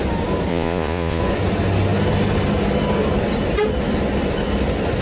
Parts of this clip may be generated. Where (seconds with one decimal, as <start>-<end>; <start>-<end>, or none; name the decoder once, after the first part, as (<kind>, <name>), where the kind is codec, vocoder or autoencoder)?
0.5-1.2 (vocoder, Vocos)